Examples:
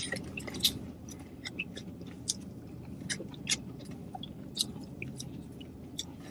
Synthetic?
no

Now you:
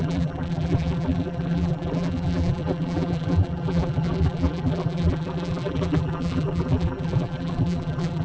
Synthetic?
yes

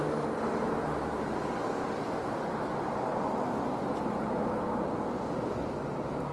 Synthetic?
no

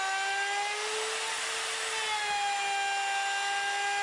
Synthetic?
no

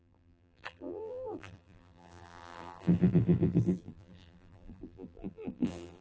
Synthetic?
yes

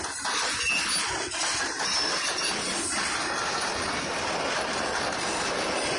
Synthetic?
no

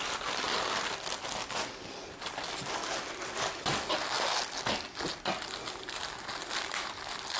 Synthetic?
no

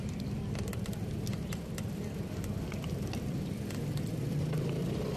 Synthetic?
yes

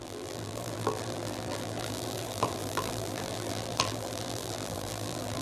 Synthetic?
yes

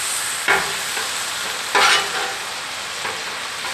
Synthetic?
no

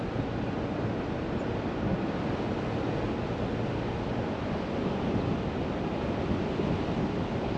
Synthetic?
no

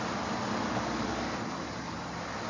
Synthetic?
no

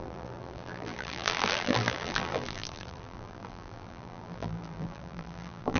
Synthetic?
yes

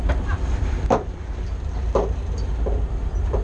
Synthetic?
yes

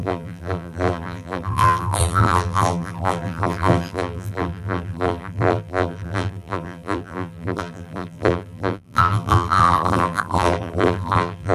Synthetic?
yes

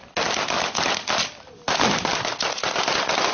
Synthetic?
no